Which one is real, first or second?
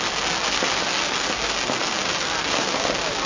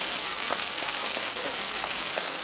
first